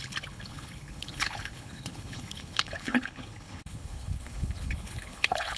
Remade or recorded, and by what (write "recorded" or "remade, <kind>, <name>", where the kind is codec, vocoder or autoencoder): remade, codec, HILCodec